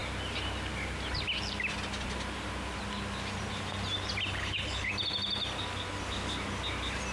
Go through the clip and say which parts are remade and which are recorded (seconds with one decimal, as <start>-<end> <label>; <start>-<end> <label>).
0.0-4.3 recorded; 4.3-4.9 remade; 4.9-7.1 recorded